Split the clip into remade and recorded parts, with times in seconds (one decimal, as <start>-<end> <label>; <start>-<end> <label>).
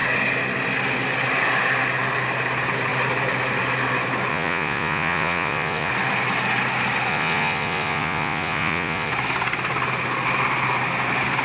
0.0-4.3 recorded; 4.3-5.9 remade; 5.9-7.1 recorded; 7.1-9.1 remade; 9.1-11.4 recorded